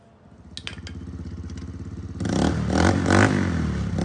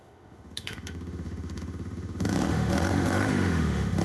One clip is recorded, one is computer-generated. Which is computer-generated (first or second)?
second